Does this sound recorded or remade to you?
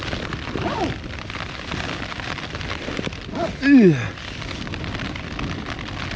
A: recorded